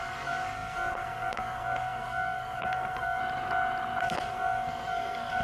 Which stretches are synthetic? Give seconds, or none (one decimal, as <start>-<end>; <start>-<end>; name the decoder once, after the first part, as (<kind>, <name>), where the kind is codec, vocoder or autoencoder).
0.0-3.2 (codec, SNAC); 4.0-5.4